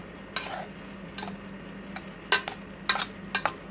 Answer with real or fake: real